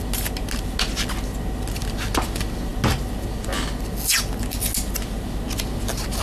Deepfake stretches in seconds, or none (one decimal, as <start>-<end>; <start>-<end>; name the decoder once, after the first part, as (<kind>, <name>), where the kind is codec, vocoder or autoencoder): none